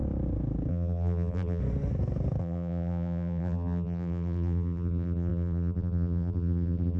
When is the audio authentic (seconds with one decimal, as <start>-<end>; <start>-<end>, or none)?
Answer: 0.0-0.7; 1.6-2.4